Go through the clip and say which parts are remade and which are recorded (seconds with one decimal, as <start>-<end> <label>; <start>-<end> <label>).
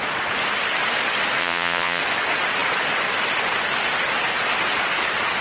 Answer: 0.0-1.4 recorded; 1.4-2.0 remade; 2.0-5.4 recorded